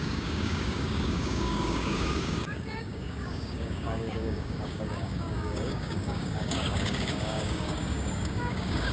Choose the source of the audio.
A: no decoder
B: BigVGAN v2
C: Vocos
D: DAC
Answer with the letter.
D